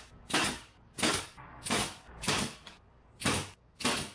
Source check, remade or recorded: remade